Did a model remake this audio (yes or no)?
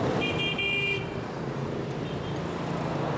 no